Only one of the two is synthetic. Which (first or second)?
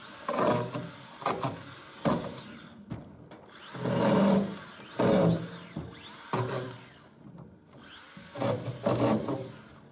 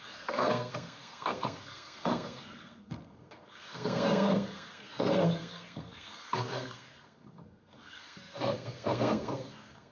second